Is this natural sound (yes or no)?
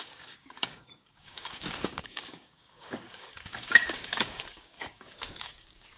no